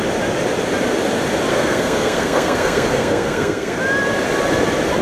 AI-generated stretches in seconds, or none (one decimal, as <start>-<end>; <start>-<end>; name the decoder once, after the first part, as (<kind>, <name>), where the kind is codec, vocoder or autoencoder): 1.5-3.8 (codec, SNAC)